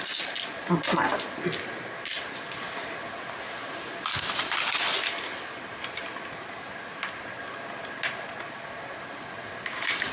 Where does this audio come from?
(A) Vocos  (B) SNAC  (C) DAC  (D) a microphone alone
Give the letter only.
D